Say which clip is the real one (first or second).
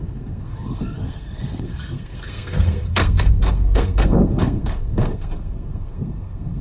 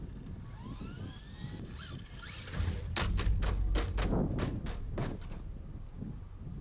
second